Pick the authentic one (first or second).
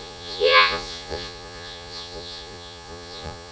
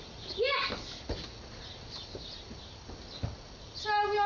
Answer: second